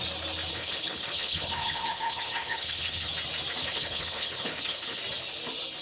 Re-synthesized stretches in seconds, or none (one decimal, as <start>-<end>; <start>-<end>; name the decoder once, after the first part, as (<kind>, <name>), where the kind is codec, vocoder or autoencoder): 0.5-3.1 (codec, HILCodec); 3.6-5.0